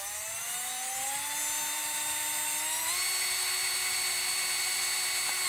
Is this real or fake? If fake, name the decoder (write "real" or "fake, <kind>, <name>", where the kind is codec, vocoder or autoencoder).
real